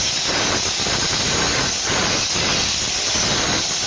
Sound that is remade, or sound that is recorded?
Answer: recorded